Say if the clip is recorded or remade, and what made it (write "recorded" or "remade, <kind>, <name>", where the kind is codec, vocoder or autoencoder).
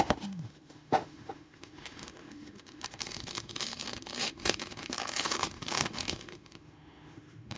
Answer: remade, autoencoder, DAC-VAE